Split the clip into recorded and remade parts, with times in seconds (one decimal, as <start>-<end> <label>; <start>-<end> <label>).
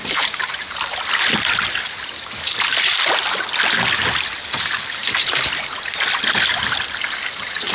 0.0-7.7 recorded